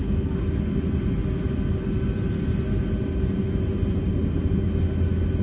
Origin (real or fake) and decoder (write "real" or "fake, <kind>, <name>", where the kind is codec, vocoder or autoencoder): real